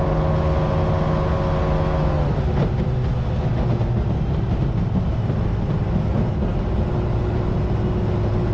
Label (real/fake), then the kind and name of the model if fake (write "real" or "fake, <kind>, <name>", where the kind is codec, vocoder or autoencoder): real